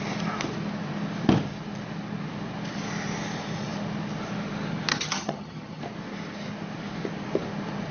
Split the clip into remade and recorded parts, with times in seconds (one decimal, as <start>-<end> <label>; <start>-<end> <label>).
0.0-4.9 recorded; 4.9-5.8 remade; 5.8-7.9 recorded